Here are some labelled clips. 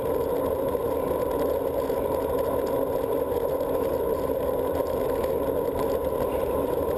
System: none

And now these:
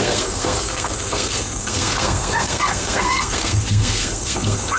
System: codec, SNAC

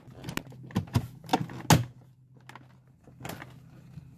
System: none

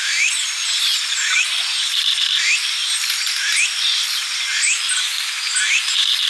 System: none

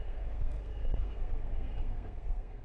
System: codec, SNAC